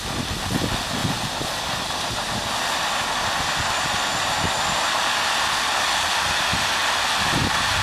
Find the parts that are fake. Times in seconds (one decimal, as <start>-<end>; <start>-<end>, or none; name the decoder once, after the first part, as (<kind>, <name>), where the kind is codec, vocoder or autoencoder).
1.0-2.5 (vocoder, BigVGAN v2); 4.1-4.8; 6.5-7.8